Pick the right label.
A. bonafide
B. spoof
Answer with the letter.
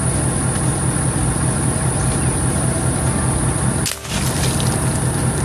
A